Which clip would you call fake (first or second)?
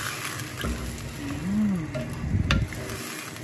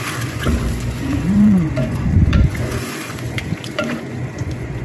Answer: second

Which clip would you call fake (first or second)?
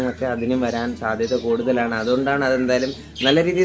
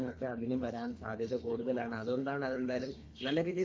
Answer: second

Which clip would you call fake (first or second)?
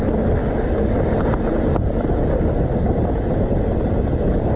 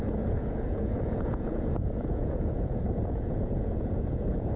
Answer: second